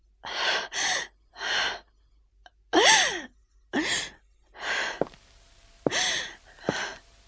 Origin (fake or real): real